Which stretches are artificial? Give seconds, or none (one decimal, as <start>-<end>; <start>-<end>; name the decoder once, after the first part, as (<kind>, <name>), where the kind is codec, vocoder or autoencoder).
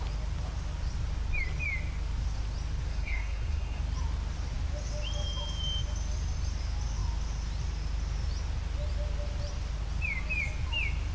2.9-3.8 (codec, SNAC)